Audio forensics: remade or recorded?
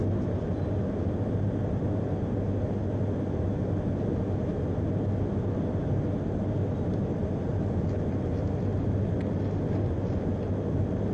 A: recorded